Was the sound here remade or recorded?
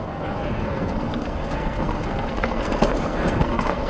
remade